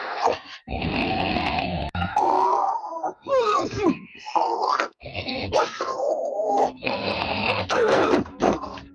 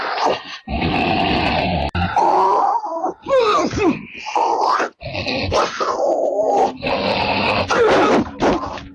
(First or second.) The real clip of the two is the second